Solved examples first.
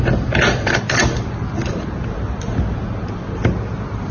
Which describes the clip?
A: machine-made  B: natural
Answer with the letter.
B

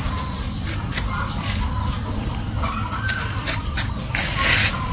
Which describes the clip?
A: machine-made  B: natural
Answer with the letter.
B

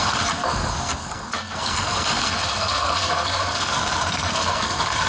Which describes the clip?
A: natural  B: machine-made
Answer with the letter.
B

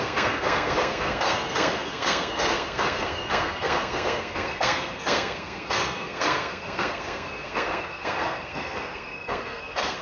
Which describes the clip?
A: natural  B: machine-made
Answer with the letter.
B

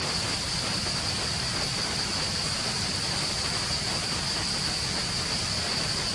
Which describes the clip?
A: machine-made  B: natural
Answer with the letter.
B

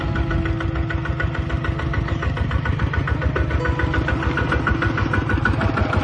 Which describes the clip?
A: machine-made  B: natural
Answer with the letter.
B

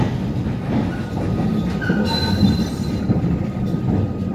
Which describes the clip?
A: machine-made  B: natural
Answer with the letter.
B